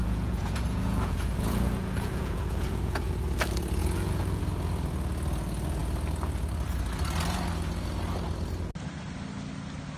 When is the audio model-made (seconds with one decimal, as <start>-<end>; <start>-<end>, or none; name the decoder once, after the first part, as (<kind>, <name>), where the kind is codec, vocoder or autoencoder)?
0.0-3.1 (vocoder, Vocos); 3.8-4.4

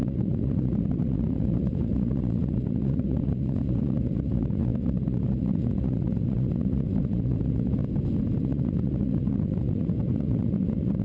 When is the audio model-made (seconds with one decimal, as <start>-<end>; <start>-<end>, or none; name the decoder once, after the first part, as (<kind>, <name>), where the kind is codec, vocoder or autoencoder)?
0.0-7.8 (vocoder, Vocos); 8.4-11.0

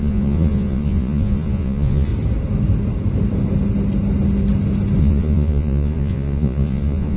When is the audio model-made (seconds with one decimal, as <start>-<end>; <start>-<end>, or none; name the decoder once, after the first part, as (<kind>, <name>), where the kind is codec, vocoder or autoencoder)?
0.0-2.1 (vocoder, Vocos); 5.0-7.2

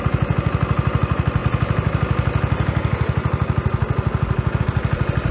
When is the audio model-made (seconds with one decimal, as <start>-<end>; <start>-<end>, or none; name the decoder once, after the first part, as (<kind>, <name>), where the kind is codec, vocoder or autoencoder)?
none

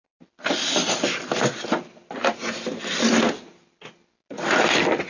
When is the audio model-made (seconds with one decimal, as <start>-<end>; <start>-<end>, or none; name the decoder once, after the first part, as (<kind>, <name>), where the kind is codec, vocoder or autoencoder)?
none